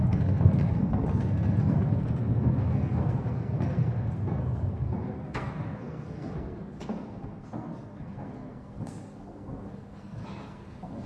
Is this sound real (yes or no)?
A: no